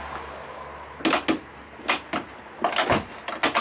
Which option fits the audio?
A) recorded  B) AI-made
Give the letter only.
A